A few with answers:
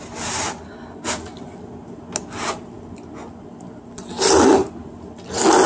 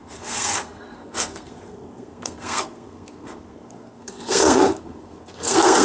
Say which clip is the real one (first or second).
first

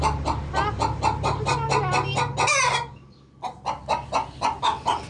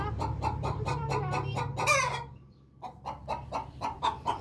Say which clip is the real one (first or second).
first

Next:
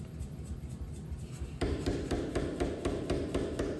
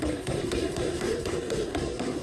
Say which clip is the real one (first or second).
first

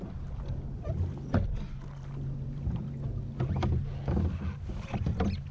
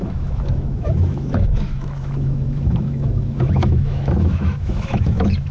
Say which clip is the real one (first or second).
first